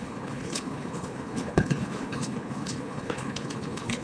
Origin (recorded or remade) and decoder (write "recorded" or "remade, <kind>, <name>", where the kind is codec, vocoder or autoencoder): remade, codec, HILCodec